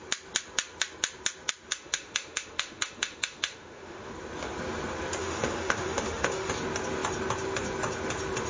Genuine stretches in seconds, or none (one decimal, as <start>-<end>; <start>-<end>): 0.0-1.7; 4.1-5.2; 6.5-8.5